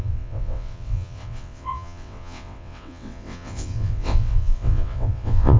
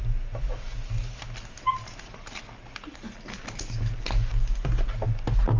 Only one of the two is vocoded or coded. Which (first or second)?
first